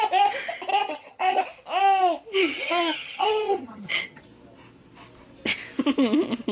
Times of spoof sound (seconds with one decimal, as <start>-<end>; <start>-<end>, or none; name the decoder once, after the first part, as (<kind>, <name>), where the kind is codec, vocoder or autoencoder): 0.7-1.4 (vocoder, HiFi-GAN); 2.4-4.2